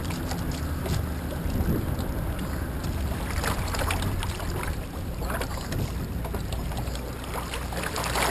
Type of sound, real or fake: real